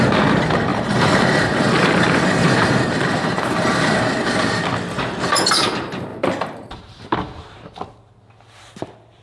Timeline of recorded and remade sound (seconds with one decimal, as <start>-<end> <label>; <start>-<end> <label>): 0.0-0.7 recorded; 0.7-4.6 remade; 4.6-6.1 recorded; 6.1-7.4 remade; 7.4-9.2 recorded